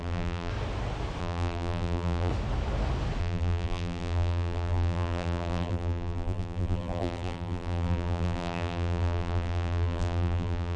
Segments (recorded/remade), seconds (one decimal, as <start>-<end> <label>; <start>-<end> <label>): 0.0-0.5 remade; 0.5-1.2 recorded; 1.2-2.3 remade; 2.3-3.2 recorded; 3.2-10.8 remade

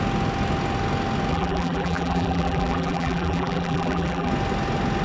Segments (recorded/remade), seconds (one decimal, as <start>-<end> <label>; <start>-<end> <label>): 0.0-1.3 recorded; 1.3-4.3 remade; 4.3-5.0 recorded

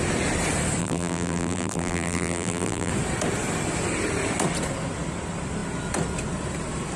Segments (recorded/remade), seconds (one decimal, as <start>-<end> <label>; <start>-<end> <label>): 0.0-0.8 recorded; 0.8-2.9 remade; 2.9-7.0 recorded

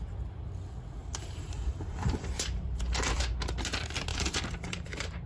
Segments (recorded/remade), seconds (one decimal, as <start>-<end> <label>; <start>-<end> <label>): 0.0-1.0 recorded; 1.0-3.2 remade; 3.2-4.1 recorded; 4.1-5.3 remade

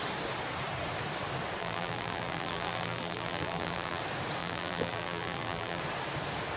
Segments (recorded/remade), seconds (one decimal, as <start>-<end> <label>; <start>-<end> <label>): 0.0-1.6 recorded; 1.6-4.0 remade; 4.0-4.4 recorded; 4.4-5.8 remade; 5.8-6.6 recorded